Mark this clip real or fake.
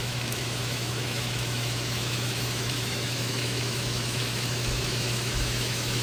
fake